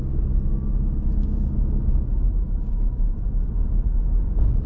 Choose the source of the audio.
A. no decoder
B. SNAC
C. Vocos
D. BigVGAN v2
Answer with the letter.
A